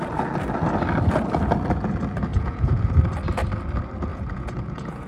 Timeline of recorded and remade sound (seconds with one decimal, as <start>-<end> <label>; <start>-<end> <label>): 0.0-2.3 recorded; 2.3-2.9 remade; 2.9-4.1 recorded; 4.1-5.1 remade